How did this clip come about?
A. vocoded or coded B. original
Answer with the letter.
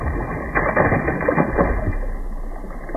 B